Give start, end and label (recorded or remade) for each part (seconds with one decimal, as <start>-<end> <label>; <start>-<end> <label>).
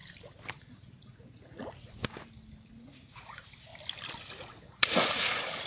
0.0-0.6 recorded; 0.6-2.1 remade; 2.1-2.7 recorded; 2.7-3.7 remade; 3.7-4.2 recorded; 4.2-5.7 remade